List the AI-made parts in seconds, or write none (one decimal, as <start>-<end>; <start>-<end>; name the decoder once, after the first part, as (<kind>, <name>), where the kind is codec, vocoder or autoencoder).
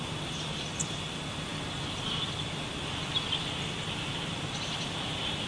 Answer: none